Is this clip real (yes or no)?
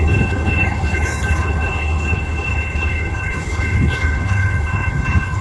no